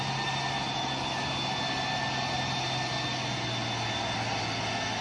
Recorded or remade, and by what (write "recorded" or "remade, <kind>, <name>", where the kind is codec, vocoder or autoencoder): recorded